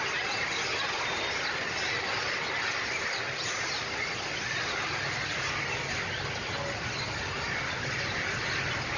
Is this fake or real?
real